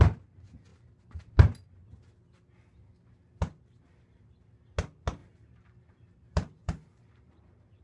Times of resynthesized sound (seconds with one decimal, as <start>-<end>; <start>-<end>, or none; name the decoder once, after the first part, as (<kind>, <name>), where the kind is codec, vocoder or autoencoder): 5.2-7.8 (vocoder, BigVGAN v2)

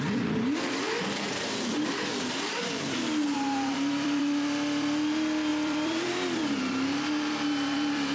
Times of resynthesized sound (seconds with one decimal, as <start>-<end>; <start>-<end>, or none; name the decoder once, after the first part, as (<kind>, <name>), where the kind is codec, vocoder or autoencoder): 0.0-8.1 (vocoder, BigVGAN v2)

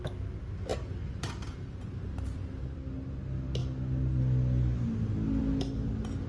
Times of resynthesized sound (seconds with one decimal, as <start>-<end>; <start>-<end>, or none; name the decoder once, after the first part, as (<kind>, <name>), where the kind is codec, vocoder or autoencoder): 0.7-1.9 (vocoder, BigVGAN v2)

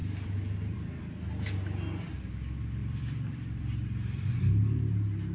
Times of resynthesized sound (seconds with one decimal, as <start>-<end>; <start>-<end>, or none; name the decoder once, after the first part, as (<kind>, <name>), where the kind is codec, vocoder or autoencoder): 0.0-1.0 (vocoder, BigVGAN v2); 2.8-4.4

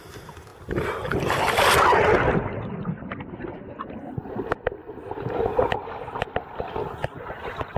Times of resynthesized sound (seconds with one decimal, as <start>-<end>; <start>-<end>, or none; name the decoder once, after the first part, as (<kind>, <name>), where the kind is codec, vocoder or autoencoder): none

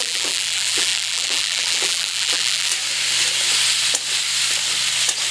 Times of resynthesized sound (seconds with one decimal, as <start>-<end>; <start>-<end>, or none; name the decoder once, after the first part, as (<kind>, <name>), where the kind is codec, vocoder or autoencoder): 0.0-2.7 (vocoder, BigVGAN v2)

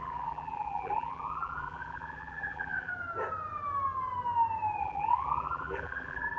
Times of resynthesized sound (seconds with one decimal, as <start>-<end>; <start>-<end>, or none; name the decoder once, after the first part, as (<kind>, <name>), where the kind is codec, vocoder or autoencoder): 0.0-2.9 (vocoder, BigVGAN v2); 4.8-6.4

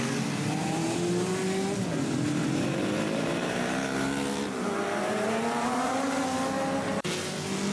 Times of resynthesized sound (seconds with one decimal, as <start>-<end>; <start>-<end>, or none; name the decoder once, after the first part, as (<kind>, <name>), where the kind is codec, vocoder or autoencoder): 0.6-1.3 (vocoder, BigVGAN v2); 2.4-6.2